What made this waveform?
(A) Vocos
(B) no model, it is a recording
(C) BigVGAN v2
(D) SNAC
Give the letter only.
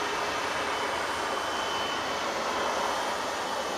C